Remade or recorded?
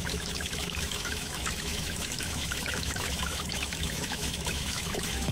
remade